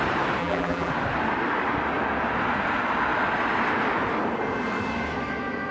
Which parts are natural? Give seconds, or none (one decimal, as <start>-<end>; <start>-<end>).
0.0-0.4; 0.9-5.7